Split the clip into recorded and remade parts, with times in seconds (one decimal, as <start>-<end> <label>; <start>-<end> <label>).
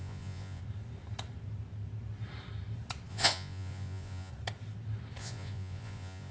0.0-0.6 remade; 0.6-3.1 recorded; 3.1-4.3 remade; 4.3-5.2 recorded; 5.2-6.3 remade